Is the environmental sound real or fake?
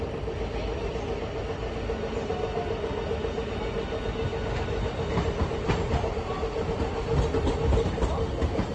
real